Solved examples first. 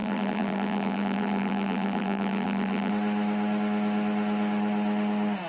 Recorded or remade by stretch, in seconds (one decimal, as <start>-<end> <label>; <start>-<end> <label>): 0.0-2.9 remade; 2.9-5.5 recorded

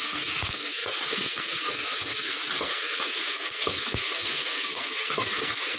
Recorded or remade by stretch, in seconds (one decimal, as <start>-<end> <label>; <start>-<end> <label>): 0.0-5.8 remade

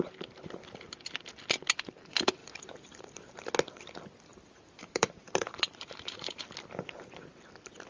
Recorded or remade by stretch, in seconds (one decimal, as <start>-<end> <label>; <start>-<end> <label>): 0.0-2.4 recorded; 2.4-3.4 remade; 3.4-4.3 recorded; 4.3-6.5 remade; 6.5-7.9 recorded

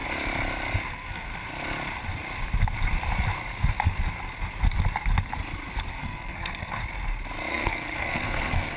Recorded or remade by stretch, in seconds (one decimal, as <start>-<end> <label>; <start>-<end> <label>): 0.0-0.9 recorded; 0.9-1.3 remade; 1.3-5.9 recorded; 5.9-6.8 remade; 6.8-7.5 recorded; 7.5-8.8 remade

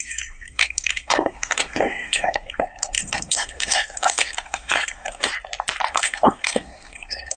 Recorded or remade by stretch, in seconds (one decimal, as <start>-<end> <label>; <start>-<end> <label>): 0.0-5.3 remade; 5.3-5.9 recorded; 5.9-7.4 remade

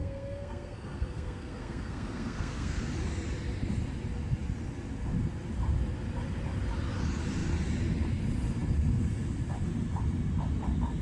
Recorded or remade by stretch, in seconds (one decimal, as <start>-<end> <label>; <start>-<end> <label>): 0.0-2.8 remade; 2.8-11.0 recorded

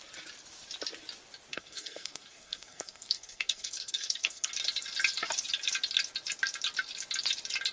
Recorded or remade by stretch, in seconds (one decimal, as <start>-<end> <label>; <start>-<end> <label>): 0.0-1.5 recorded; 1.5-4.5 remade; 4.5-7.7 recorded

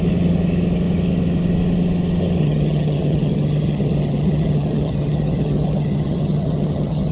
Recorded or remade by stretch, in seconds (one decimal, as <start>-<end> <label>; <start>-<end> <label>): 0.0-2.4 recorded; 2.4-7.1 remade